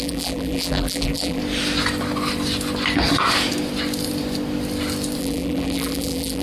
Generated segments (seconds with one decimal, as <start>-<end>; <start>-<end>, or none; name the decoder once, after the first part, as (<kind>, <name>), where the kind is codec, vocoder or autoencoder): 0.0-1.4 (vocoder, BigVGAN v2); 5.2-6.4